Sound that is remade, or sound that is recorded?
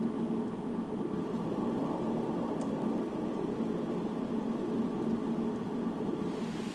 recorded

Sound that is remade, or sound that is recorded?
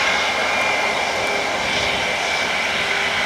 recorded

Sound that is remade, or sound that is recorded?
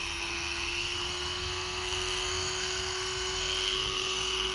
remade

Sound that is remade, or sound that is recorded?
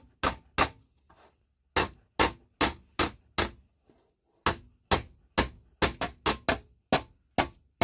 recorded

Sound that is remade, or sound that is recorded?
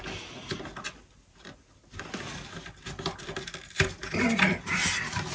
recorded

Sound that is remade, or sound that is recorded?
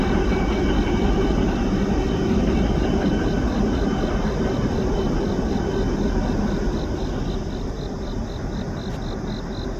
recorded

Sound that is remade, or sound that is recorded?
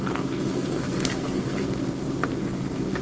remade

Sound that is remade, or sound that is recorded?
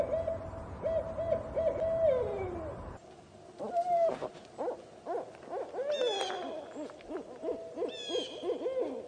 recorded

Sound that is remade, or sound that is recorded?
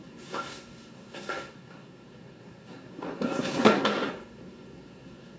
remade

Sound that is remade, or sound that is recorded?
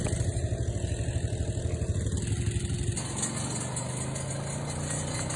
recorded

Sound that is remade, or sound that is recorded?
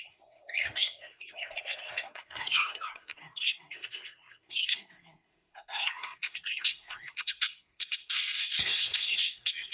remade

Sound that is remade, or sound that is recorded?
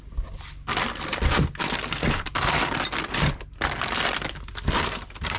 recorded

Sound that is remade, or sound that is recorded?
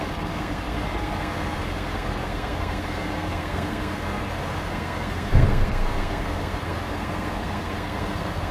remade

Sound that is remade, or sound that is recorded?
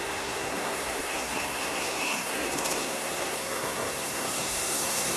remade